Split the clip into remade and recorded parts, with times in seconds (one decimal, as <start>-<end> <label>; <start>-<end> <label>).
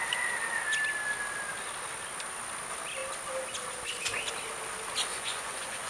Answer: 0.0-5.1 recorded; 5.1-5.9 remade